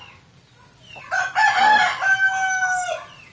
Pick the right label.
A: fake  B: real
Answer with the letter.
B